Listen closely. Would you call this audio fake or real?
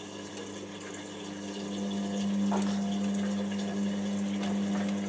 real